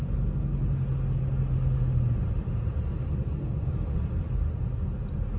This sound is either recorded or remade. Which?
recorded